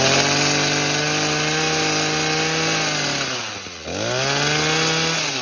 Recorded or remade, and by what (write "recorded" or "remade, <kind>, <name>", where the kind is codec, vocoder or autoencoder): recorded